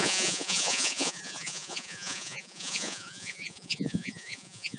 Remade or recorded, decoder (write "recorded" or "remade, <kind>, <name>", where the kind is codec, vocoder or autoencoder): remade, vocoder, Vocos